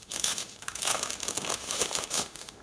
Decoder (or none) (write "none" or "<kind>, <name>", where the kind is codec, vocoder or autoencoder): autoencoder, DAC-VAE